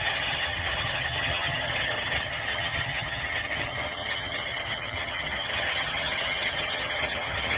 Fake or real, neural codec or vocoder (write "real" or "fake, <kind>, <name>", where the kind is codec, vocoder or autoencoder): fake, vocoder, HiFi-GAN